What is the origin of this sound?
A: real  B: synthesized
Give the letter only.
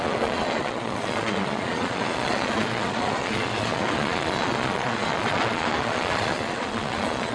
B